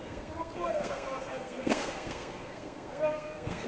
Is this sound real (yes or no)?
no